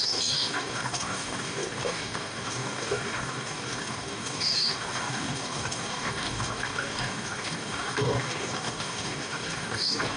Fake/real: fake